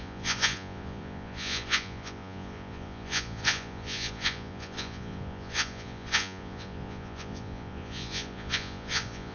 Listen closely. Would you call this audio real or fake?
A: fake